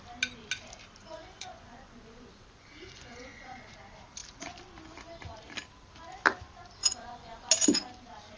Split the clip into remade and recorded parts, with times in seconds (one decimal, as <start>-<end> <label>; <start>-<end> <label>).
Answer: 0.0-1.0 recorded; 1.0-3.7 remade; 3.7-6.8 recorded; 6.8-7.5 remade; 7.5-8.4 recorded